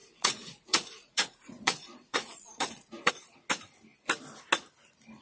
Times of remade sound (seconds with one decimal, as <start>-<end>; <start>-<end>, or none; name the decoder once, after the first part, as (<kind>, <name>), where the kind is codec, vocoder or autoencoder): 0.0-3.1 (vocoder, Vocos)